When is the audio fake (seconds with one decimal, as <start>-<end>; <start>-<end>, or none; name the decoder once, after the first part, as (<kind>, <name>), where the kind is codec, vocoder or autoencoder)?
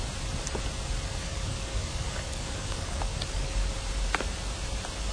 1.2-3.7 (codec, DAC)